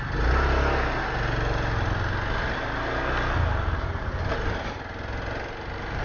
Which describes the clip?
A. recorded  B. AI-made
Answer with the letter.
A